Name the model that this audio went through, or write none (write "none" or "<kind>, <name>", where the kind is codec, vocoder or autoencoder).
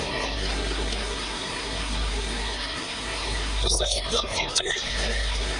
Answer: codec, SNAC